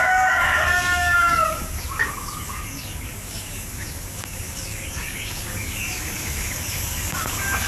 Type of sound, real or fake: fake